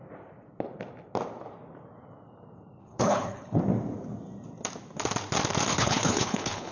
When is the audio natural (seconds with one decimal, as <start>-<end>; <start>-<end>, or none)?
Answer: 0.0-2.8; 3.6-5.7